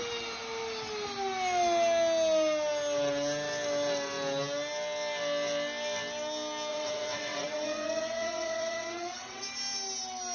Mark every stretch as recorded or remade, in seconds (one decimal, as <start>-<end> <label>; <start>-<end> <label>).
0.0-6.7 recorded; 6.7-9.4 remade; 9.4-10.3 recorded

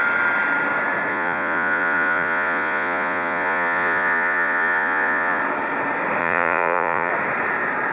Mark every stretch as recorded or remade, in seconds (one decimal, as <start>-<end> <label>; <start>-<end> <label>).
0.0-1.1 recorded; 1.1-5.4 remade; 5.4-6.2 recorded; 6.2-7.1 remade; 7.1-7.9 recorded

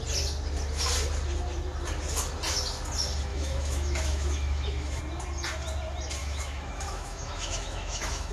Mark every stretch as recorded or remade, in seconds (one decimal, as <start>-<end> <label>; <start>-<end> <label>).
0.0-3.3 recorded; 3.3-5.0 remade; 5.0-6.2 recorded; 6.2-8.3 remade

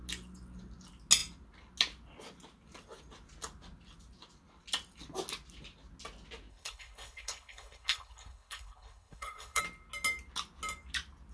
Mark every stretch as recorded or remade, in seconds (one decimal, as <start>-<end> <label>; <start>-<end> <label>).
0.0-6.5 recorded; 6.5-9.6 remade; 9.6-11.3 recorded

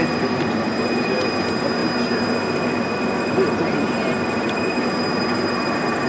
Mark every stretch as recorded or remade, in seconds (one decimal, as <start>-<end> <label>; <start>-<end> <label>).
0.0-1.8 remade; 1.8-4.2 recorded; 4.2-6.1 remade